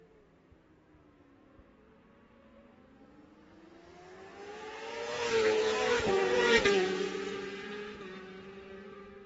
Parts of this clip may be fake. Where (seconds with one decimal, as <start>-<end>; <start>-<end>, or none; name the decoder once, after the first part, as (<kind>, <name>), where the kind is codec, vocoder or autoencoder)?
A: 4.5-8.0 (vocoder, Vocos)